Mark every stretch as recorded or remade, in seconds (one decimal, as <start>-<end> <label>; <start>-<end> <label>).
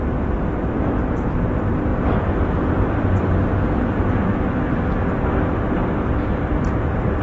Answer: 0.0-1.9 recorded; 1.9-4.3 remade; 4.3-5.8 recorded; 5.8-6.8 remade; 6.8-7.2 recorded